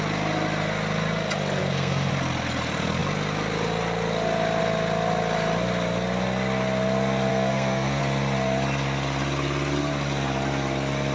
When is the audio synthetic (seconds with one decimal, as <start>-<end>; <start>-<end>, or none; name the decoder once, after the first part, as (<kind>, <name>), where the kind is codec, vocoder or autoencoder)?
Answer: 1.6-2.1 (codec, SNAC); 7.3-8.0